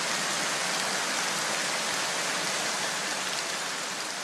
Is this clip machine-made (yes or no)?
no